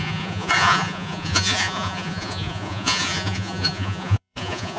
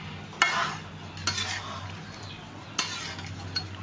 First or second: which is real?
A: second